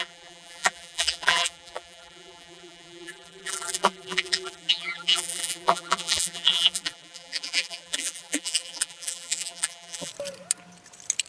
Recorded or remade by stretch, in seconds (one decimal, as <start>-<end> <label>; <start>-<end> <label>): 0.0-10.1 remade; 10.1-11.3 recorded